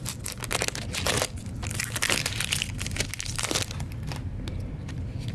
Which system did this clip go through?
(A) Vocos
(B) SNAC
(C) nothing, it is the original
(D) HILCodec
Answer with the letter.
C